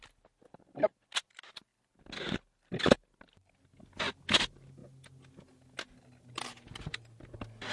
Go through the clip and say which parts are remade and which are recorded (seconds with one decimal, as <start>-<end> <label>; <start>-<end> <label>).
0.0-7.7 recorded